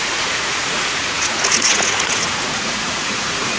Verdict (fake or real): fake